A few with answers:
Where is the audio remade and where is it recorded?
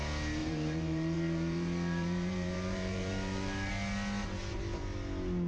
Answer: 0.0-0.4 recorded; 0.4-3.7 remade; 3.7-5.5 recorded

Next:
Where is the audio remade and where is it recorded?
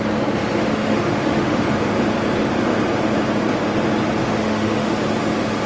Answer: 0.0-0.6 recorded; 0.6-1.6 remade; 1.6-4.2 recorded; 4.2-4.9 remade; 4.9-5.7 recorded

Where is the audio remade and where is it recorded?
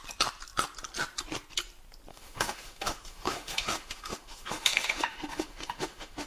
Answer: 0.0-2.1 recorded; 2.1-6.3 remade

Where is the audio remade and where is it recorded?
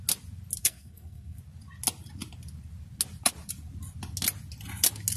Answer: 0.0-0.6 recorded; 0.6-1.4 remade; 1.4-5.2 recorded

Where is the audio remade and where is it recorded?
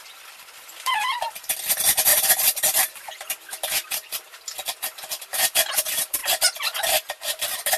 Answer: 0.0-2.1 recorded; 2.1-5.7 remade; 5.7-7.8 recorded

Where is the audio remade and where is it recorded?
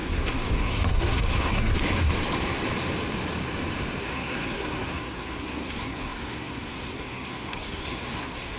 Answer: 0.0-1.7 remade; 1.7-4.0 recorded; 4.0-8.6 remade